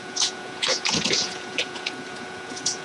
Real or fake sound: fake